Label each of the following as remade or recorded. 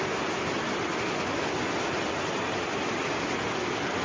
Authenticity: recorded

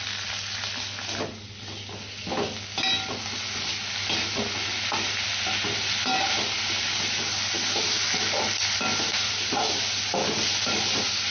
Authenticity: recorded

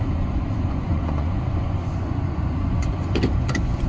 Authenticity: remade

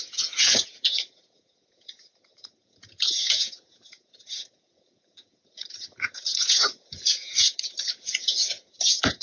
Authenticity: remade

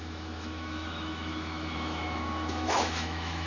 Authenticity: remade